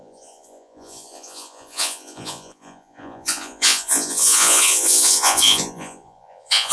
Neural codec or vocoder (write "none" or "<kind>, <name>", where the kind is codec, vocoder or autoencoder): vocoder, Vocos